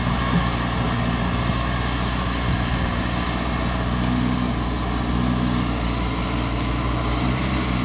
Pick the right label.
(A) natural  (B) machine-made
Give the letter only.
A